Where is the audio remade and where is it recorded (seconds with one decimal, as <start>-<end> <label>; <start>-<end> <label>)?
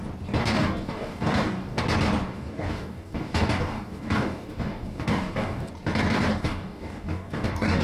0.0-0.4 recorded; 0.4-1.8 remade; 1.8-2.3 recorded; 2.3-5.7 remade; 5.7-6.3 recorded; 6.3-7.8 remade